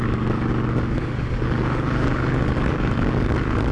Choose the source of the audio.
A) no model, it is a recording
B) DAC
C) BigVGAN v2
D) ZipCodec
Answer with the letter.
B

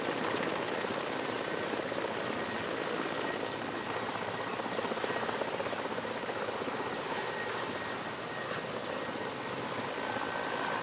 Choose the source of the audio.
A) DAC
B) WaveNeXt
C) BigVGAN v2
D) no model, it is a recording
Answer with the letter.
D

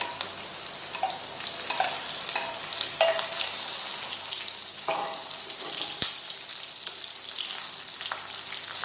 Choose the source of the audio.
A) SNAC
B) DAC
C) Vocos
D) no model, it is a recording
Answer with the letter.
D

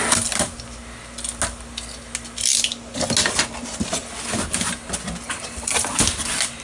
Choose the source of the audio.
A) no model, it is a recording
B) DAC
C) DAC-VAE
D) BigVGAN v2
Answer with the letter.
A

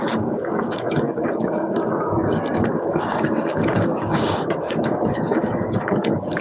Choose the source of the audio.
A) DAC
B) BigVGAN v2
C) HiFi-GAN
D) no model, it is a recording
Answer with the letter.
A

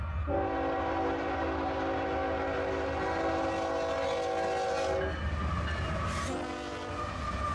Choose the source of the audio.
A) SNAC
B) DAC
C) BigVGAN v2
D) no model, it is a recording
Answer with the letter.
D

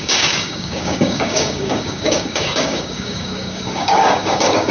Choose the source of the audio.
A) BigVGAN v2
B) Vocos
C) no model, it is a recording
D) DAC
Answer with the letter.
D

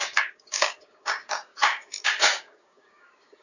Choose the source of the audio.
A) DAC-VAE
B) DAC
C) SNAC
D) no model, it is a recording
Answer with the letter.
B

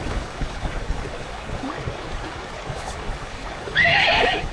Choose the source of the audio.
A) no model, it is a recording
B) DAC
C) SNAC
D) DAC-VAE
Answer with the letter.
B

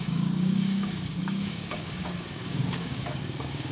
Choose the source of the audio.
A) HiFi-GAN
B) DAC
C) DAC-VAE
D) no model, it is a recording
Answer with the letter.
B